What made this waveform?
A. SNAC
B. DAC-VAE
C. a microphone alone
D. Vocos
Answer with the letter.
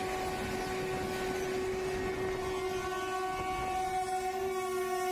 C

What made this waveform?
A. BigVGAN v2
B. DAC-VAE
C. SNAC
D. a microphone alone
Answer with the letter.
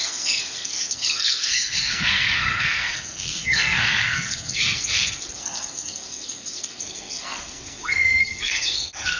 C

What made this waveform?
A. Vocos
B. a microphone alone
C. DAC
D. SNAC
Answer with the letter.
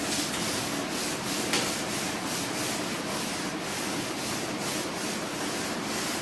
B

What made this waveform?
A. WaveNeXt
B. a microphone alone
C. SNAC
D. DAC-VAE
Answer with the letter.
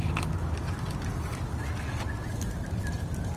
B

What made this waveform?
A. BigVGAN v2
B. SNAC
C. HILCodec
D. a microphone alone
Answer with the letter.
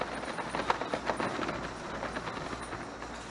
D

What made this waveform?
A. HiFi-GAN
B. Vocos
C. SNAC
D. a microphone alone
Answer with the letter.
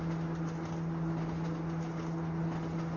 D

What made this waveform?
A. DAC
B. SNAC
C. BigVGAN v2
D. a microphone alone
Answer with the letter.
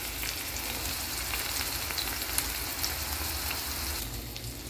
D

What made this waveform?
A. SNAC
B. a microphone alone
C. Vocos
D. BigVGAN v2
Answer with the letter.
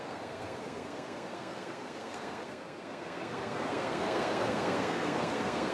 A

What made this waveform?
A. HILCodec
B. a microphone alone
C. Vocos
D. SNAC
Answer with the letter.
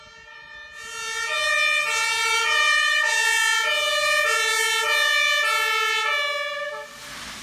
B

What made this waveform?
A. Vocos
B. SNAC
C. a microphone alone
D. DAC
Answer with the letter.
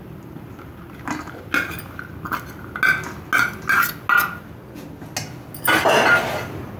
C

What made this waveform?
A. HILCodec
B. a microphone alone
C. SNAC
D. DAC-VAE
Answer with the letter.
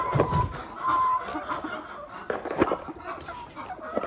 B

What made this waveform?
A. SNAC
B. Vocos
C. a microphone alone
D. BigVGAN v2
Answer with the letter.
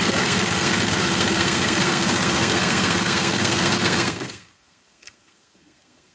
A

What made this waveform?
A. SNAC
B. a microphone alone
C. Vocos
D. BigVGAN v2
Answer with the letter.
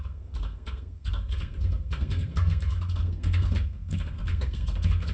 A